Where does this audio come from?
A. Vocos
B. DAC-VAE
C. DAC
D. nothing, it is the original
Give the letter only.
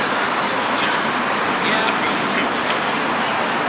D